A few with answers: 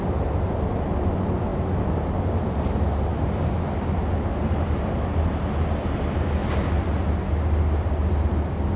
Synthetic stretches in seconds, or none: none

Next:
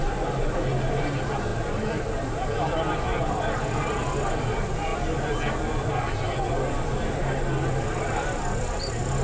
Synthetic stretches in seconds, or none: none

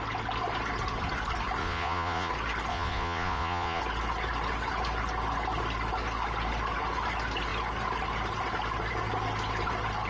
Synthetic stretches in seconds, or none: 1.6-2.3 (vocoder, Vocos); 2.7-3.8